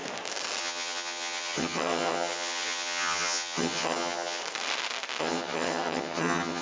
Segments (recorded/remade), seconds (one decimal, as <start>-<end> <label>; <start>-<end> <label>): 0.0-0.6 recorded; 0.6-4.4 remade; 4.4-5.2 recorded; 5.2-6.6 remade